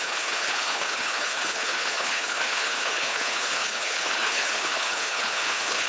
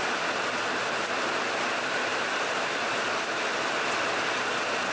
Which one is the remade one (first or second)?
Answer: first